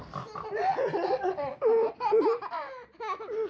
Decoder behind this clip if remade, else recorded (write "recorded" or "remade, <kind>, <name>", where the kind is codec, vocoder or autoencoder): recorded